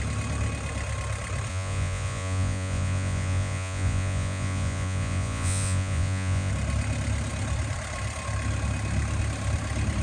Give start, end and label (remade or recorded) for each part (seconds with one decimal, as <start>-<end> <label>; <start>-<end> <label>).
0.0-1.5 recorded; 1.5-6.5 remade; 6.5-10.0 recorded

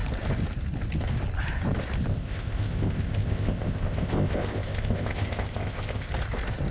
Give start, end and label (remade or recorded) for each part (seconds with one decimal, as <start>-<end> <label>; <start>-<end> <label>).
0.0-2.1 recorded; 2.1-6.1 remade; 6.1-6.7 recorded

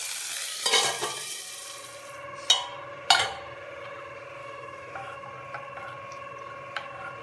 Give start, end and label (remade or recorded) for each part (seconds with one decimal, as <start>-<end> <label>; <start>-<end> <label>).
0.0-4.4 recorded; 4.4-5.2 remade; 5.2-7.2 recorded